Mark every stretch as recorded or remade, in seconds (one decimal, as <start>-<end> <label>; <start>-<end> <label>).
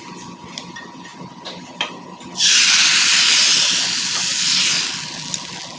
0.0-5.8 recorded